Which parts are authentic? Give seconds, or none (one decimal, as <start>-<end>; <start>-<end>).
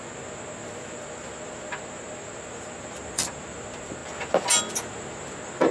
4.0-4.6